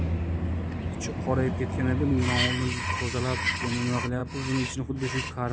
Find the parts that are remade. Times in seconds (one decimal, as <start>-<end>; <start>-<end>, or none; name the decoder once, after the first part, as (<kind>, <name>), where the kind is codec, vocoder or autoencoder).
none